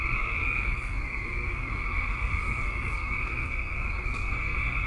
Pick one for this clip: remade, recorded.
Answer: remade